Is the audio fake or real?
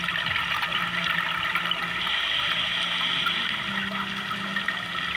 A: real